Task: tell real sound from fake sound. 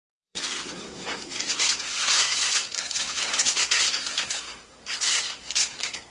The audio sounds fake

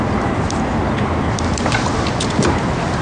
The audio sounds real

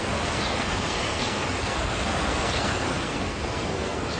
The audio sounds fake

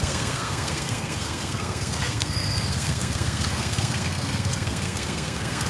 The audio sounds fake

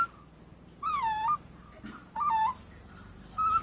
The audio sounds real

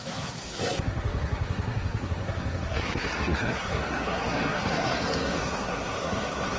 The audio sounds fake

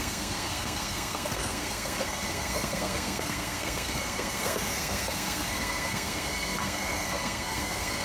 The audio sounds fake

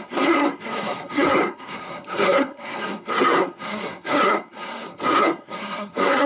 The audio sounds fake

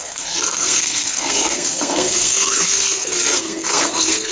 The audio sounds fake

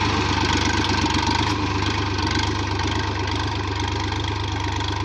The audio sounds real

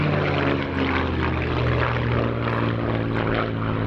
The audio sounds real